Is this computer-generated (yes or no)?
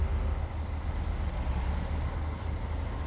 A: no